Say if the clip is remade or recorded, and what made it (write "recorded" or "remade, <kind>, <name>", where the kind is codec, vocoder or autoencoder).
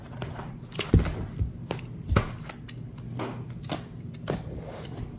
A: recorded